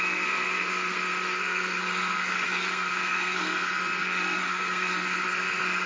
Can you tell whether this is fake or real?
fake